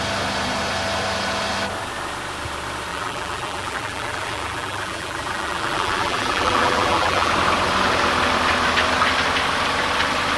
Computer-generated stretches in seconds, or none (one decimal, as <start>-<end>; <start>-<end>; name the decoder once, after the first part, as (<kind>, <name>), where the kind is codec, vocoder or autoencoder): 2.9-7.3 (vocoder, BigVGAN v2)